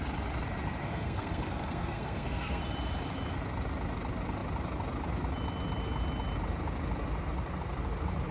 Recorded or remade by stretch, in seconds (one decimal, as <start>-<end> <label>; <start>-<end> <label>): 0.0-0.8 recorded; 0.8-2.6 remade; 2.6-8.3 recorded